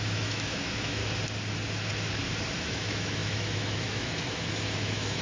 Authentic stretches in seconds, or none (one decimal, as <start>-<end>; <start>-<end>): 1.0-2.6